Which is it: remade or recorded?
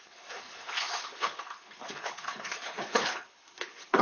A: remade